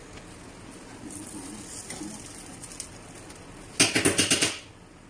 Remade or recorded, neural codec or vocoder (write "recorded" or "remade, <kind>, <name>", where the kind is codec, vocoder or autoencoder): recorded